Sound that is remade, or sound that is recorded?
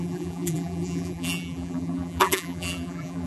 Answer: remade